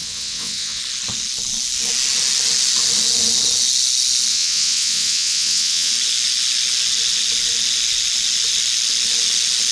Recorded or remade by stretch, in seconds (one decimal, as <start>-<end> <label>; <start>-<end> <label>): 0.0-0.8 remade; 0.8-4.3 recorded; 4.3-5.9 remade; 5.9-9.7 recorded